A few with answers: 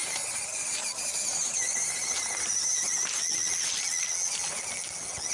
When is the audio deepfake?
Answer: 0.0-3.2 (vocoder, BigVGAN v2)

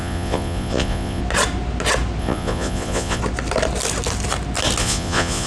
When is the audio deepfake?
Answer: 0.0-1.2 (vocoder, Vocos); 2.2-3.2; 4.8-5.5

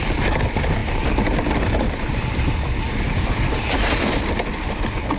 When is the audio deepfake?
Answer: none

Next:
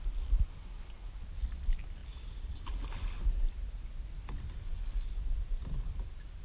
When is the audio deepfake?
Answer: none

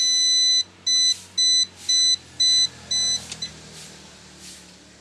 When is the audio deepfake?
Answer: none

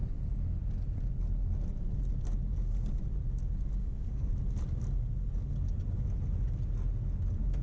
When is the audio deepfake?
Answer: 3.8-4.3 (codec, SNAC)